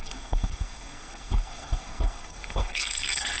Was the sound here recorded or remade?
remade